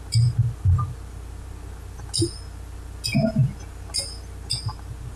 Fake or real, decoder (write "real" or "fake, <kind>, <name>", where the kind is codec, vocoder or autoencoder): real